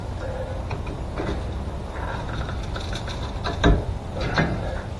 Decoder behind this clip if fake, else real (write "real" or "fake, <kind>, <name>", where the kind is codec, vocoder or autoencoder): real